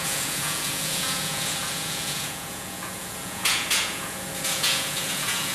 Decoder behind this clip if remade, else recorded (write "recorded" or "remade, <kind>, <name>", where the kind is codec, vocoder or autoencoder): remade, vocoder, Vocos